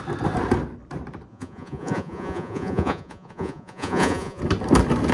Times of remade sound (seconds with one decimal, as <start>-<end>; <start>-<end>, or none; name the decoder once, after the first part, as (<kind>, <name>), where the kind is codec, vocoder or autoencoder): 1.3-4.4 (vocoder, Vocos)